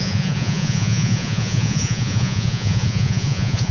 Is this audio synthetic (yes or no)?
yes